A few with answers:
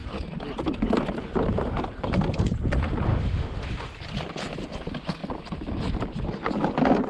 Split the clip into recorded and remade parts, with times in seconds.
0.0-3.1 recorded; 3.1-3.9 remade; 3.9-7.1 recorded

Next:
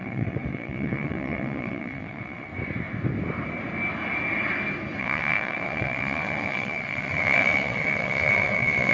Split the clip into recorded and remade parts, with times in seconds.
0.0-2.5 remade; 2.5-5.0 recorded; 5.0-8.9 remade

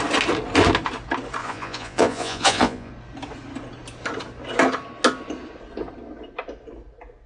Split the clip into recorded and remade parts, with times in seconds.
0.0-1.4 recorded; 1.4-2.9 remade; 2.9-7.3 recorded

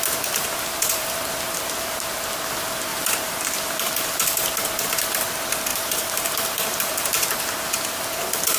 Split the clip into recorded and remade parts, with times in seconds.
0.0-2.9 recorded; 2.9-3.9 remade; 3.9-5.7 recorded; 5.7-6.9 remade; 6.9-8.6 recorded